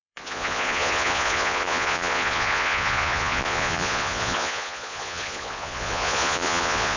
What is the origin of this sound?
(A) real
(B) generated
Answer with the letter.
B